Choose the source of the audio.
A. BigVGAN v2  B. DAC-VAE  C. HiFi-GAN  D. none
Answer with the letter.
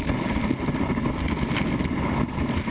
D